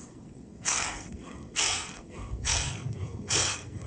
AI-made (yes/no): yes